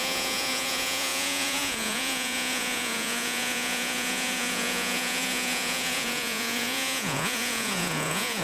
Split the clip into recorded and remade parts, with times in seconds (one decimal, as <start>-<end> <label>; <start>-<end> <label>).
0.0-8.4 remade